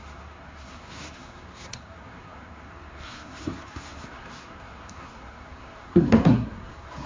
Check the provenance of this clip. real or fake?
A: fake